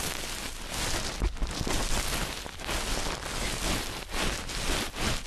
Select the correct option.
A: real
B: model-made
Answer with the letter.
A